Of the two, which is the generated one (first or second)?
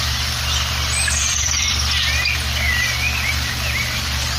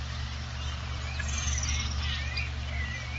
first